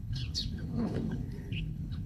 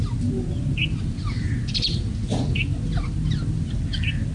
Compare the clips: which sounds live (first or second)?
second